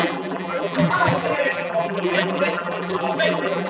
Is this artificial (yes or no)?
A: yes